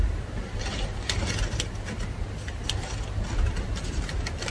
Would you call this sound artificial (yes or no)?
no